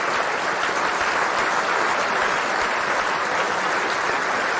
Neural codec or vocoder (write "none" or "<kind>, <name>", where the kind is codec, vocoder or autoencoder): none